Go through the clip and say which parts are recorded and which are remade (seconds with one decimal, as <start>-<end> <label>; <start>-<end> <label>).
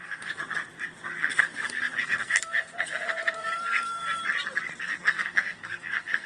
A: 0.0-0.4 remade; 0.4-1.2 recorded; 1.2-4.2 remade; 4.2-4.8 recorded; 4.8-6.3 remade